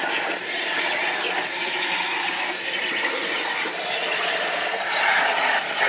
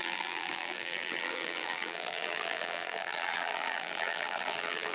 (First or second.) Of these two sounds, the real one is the first